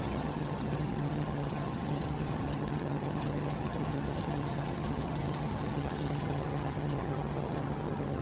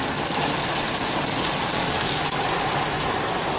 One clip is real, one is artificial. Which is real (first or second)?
second